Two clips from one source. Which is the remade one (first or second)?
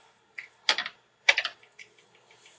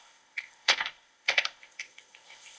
second